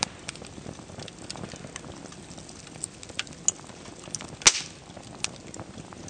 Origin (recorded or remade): recorded